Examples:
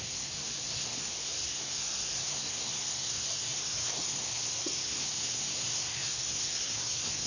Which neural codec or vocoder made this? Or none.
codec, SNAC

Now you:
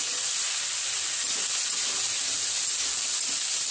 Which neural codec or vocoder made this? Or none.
none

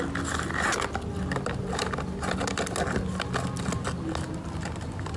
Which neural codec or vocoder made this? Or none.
none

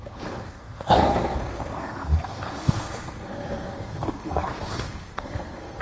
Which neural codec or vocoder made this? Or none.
codec, SNAC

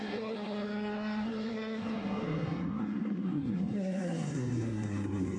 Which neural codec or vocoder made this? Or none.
codec, SNAC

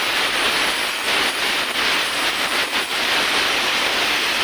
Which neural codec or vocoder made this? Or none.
none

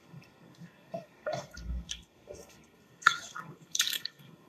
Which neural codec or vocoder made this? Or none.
codec, SNAC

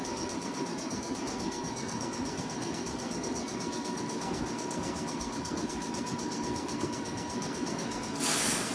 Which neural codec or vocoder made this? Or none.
codec, SNAC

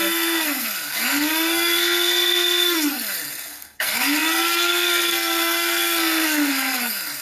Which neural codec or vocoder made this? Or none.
codec, SNAC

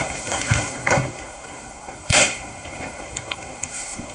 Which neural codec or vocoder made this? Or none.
codec, SNAC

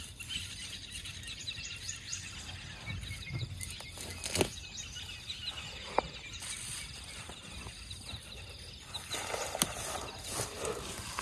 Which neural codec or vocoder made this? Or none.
none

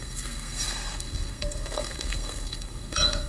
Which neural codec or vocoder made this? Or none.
codec, SNAC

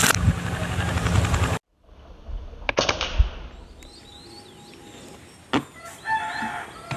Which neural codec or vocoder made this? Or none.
none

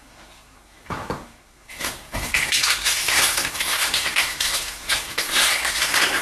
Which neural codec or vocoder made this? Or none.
codec, SNAC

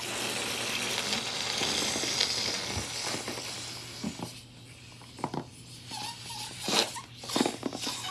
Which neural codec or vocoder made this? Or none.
none